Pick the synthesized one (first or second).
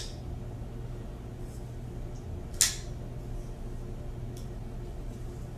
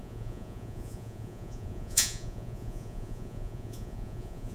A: second